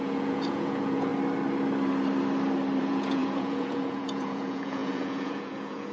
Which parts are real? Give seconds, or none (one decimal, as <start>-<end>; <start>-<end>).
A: 1.1-2.8